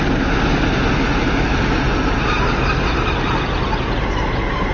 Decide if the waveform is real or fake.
real